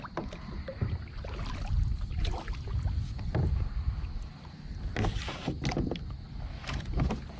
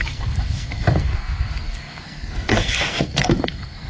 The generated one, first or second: second